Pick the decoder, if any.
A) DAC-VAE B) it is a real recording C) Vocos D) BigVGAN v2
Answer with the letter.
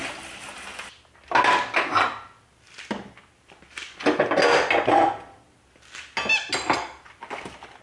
B